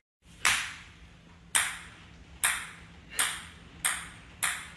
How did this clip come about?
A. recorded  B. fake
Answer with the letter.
A